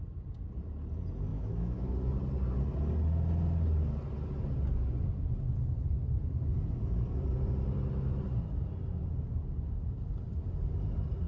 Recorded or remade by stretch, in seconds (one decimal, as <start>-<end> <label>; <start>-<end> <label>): 0.0-1.3 recorded; 1.3-1.9 remade; 1.9-11.3 recorded